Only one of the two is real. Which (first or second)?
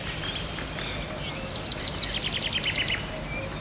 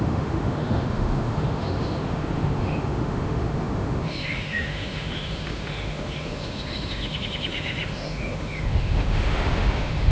first